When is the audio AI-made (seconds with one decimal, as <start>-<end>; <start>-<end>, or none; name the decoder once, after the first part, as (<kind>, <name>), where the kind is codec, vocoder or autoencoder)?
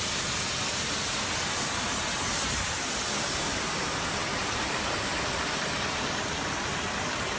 none